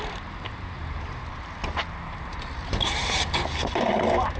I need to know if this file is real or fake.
fake